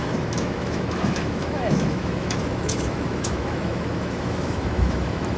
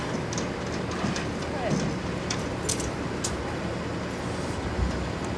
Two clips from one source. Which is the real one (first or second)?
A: second